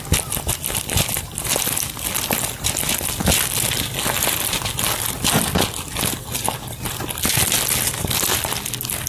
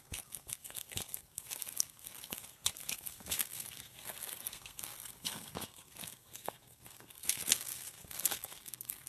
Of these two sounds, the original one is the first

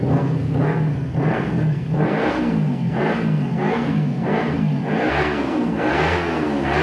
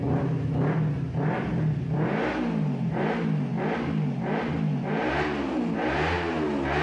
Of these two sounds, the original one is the second